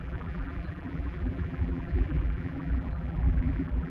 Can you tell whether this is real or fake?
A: fake